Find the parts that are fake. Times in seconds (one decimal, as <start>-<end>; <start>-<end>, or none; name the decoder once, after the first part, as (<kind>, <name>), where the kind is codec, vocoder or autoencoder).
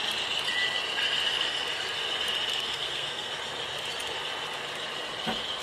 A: 2.5-3.3 (codec, SNAC)